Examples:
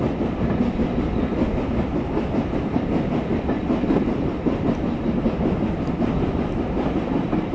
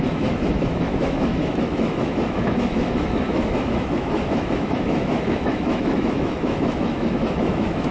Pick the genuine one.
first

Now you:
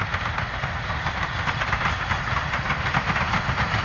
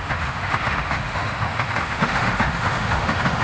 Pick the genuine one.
first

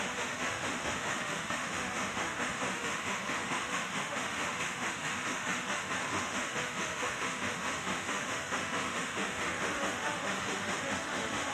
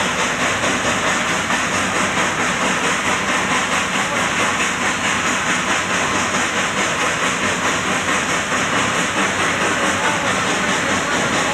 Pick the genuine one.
second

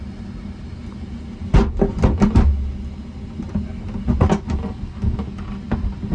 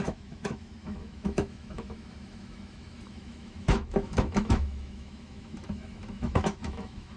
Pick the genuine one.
first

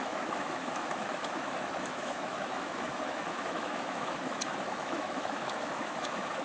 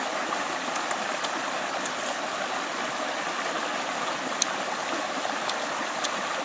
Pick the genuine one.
second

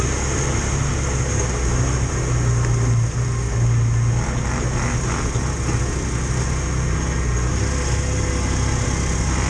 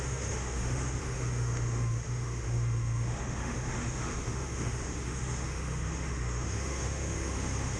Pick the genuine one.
first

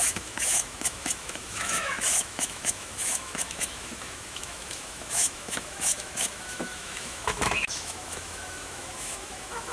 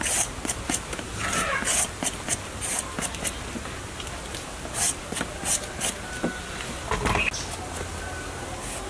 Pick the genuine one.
second